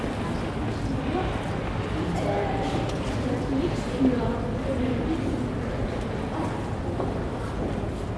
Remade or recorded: recorded